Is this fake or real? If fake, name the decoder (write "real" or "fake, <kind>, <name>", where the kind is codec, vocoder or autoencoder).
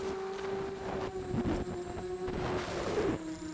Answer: real